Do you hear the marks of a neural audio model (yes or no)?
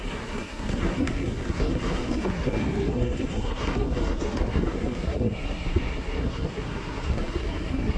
yes